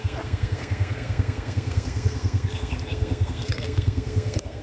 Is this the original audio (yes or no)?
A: no